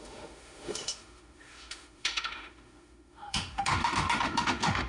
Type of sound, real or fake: fake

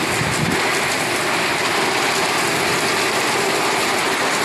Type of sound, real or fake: real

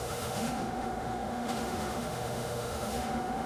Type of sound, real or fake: fake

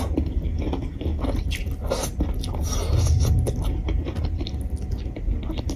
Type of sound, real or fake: real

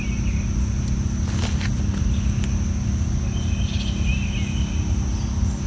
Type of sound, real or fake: real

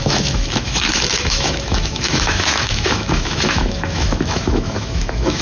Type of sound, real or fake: fake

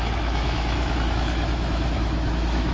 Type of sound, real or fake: fake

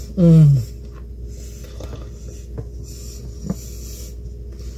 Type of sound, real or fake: real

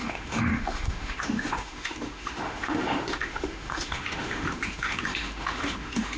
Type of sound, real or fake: fake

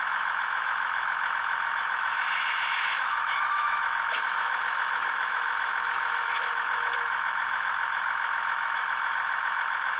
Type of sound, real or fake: fake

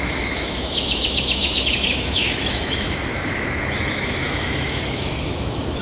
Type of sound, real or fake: fake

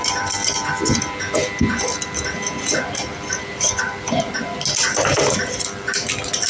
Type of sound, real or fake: real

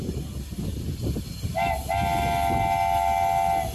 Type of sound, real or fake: real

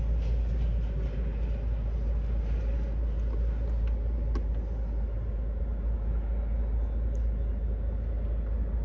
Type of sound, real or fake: real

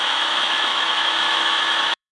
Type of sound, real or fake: fake